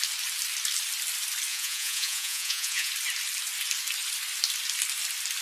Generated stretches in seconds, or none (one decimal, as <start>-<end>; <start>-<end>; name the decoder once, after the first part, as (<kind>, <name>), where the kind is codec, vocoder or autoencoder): 1.5-2.9 (vocoder, Vocos)